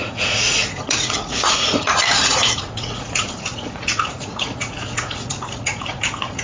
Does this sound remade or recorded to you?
remade